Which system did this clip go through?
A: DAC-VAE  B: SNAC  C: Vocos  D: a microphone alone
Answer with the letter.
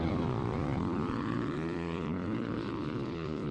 C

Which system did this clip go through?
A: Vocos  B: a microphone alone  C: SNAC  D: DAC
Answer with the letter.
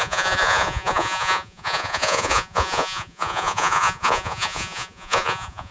A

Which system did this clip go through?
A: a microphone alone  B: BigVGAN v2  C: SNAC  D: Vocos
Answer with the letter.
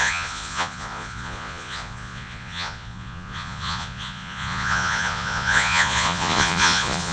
D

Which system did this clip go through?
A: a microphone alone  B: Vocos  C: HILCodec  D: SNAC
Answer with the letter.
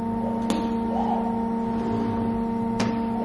A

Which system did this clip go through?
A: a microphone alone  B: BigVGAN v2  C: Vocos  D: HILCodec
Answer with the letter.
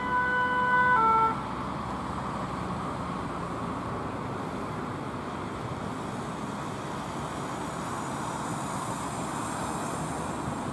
A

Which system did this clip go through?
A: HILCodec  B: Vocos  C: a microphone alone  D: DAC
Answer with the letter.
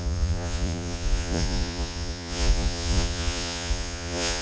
B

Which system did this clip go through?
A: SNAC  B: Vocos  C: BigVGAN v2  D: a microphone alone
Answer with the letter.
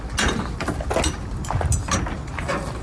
D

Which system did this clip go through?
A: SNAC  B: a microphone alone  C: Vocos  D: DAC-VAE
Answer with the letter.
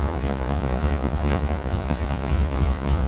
C